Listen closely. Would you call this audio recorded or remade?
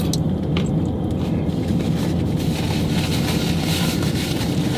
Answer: recorded